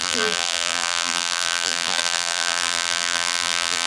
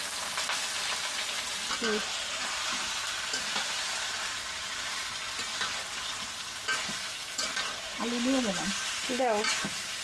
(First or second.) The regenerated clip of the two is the first